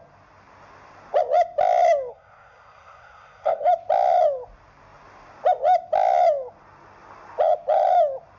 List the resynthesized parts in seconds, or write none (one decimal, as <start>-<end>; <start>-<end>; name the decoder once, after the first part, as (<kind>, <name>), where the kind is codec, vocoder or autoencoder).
2.1-3.7 (codec, SNAC)